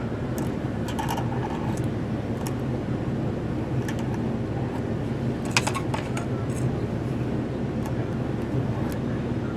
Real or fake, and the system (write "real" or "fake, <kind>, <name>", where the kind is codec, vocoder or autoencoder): real